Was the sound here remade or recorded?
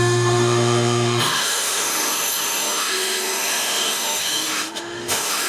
remade